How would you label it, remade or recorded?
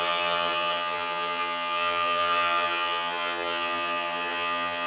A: remade